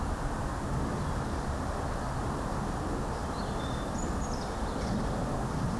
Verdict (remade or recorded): recorded